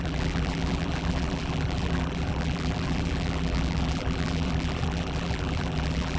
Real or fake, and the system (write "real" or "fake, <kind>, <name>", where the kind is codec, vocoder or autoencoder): fake, vocoder, BigVGAN v2